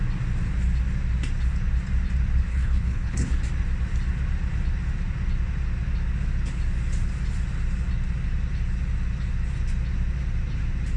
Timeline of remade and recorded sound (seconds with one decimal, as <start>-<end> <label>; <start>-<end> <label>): 0.0-2.5 recorded; 2.5-3.4 remade; 3.4-11.0 recorded